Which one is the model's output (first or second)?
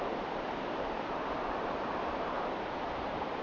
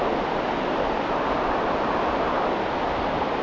first